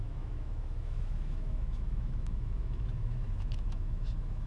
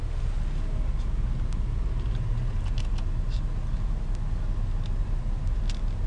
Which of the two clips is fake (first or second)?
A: first